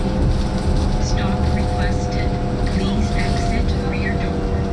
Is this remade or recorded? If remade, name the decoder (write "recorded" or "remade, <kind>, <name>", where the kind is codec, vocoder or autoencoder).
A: recorded